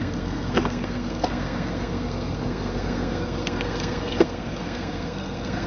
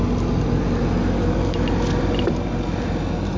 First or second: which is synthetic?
first